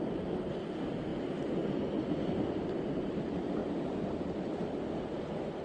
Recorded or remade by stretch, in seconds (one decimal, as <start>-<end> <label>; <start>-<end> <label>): 0.0-5.6 recorded